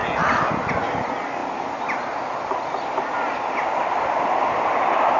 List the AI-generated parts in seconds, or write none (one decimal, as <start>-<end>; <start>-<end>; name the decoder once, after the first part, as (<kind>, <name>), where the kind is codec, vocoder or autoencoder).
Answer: none